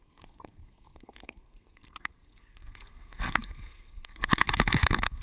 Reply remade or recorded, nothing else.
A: remade